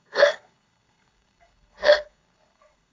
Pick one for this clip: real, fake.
fake